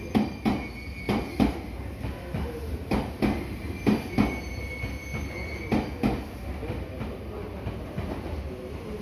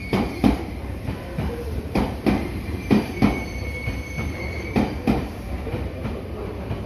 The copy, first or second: second